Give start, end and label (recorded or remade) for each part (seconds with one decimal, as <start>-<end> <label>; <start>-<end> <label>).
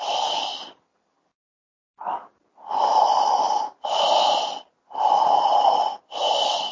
0.0-6.7 recorded